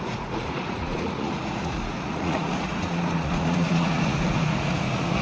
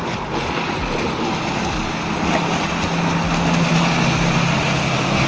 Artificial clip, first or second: first